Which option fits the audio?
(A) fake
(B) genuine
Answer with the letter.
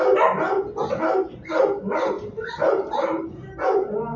B